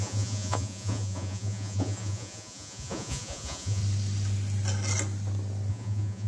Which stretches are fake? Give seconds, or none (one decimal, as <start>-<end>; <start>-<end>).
0.0-3.8; 5.7-6.3